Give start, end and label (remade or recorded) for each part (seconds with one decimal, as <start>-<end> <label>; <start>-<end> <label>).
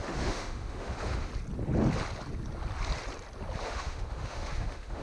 0.0-1.3 remade; 1.3-3.6 recorded; 3.6-5.0 remade